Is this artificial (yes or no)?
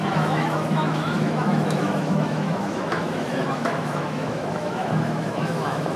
yes